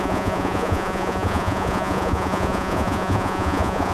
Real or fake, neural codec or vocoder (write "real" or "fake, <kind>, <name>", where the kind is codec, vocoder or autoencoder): fake, vocoder, Vocos